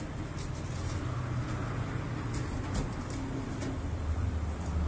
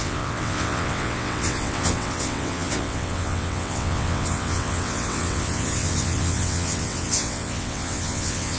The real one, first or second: first